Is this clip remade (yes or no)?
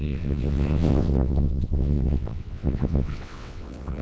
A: yes